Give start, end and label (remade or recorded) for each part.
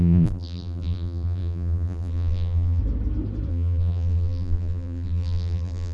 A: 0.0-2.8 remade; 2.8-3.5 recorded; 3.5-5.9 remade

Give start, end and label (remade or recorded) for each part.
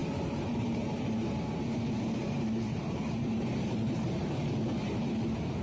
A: 0.0-1.3 remade; 1.3-2.2 recorded; 2.2-4.3 remade; 4.3-5.6 recorded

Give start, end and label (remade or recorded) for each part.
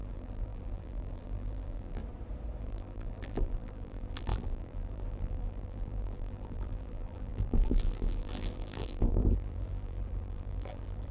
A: 0.0-2.0 remade; 2.0-2.6 recorded; 2.6-11.1 remade